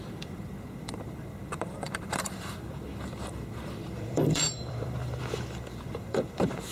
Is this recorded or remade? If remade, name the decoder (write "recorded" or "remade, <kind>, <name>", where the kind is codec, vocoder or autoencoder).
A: remade, vocoder, BigVGAN v2